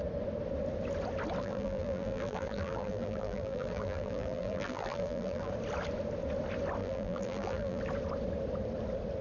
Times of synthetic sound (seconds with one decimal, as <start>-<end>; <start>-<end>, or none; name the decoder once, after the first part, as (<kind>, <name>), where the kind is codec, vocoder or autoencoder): 1.4-5.5 (vocoder, BigVGAN v2); 6.8-7.8